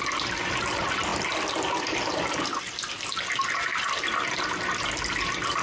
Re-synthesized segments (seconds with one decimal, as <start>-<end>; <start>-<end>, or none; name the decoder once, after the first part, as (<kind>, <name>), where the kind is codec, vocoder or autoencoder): none